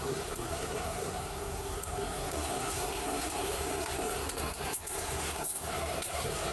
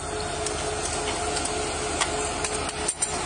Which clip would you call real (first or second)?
second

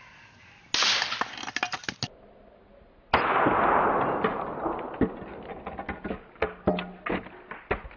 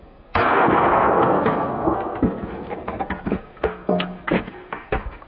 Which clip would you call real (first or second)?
first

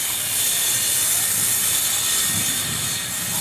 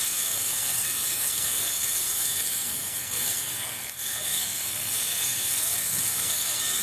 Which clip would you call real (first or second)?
first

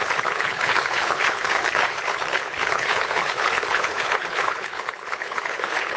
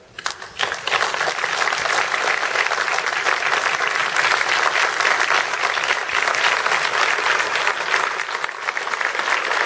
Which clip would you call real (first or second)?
second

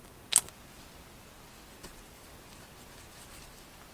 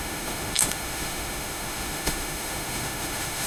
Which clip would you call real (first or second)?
first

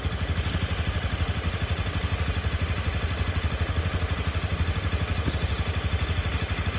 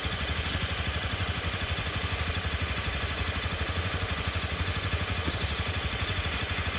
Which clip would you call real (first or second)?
first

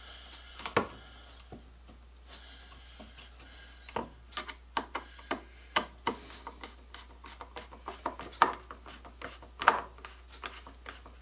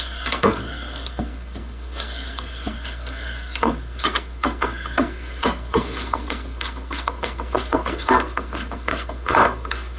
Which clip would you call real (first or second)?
first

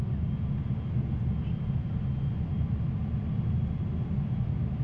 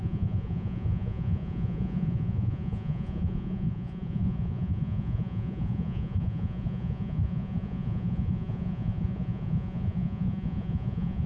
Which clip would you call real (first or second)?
first